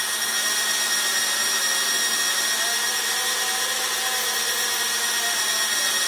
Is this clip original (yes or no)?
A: yes